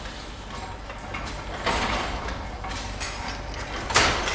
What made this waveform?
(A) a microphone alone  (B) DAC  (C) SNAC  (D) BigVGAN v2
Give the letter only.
A